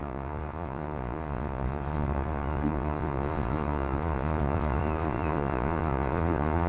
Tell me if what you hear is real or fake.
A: fake